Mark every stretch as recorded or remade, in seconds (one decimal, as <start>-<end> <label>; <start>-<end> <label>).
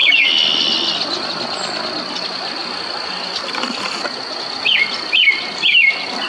0.0-6.3 recorded